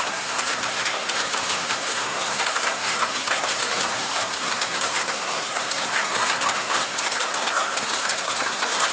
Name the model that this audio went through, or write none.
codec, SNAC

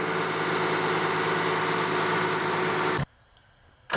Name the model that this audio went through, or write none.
none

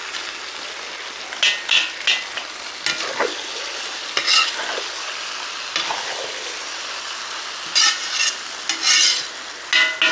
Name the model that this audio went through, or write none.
none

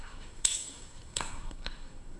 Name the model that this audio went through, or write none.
codec, SNAC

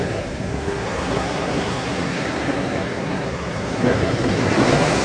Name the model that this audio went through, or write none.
codec, SNAC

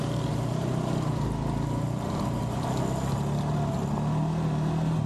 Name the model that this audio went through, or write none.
none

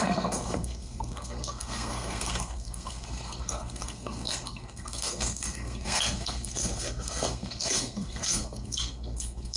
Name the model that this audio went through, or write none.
codec, SNAC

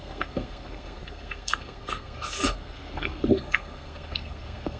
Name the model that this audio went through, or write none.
codec, SNAC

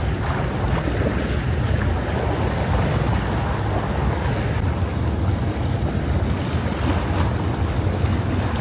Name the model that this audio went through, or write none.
none